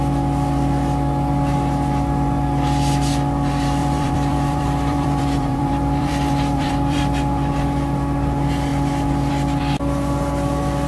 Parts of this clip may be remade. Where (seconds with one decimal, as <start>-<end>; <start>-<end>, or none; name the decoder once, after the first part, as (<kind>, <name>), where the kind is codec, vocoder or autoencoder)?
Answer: 3.8-7.0 (vocoder, BigVGAN v2)